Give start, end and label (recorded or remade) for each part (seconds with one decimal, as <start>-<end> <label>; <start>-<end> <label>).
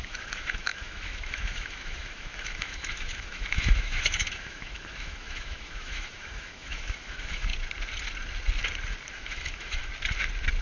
0.0-7.5 remade; 7.5-9.1 recorded; 9.1-9.8 remade; 9.8-10.6 recorded